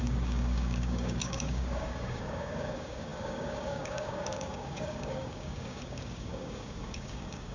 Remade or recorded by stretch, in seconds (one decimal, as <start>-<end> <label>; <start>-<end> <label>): 0.0-7.5 remade